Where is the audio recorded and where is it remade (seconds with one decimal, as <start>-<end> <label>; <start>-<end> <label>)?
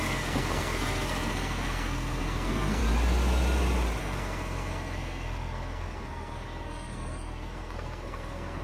0.0-2.8 remade; 2.8-4.0 recorded; 4.0-8.6 remade